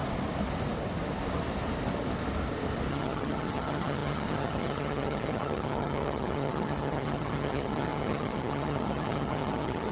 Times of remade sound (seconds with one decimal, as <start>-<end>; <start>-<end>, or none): 2.9-9.9